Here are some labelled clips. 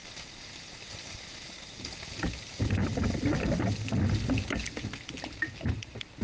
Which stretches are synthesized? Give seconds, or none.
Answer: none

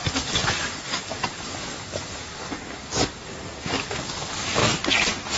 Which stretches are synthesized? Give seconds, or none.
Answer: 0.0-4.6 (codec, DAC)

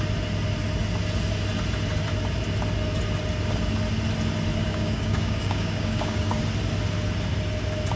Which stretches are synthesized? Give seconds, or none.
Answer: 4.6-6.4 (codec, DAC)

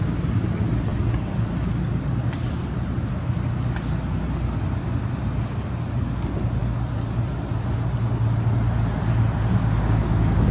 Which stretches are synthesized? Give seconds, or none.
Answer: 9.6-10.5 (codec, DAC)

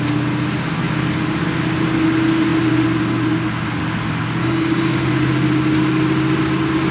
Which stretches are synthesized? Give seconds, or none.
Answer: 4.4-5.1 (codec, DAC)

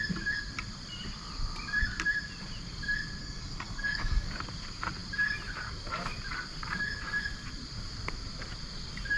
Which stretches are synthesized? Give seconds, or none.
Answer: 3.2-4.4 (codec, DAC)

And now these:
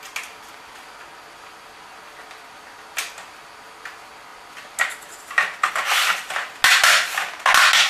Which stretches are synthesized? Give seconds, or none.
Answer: none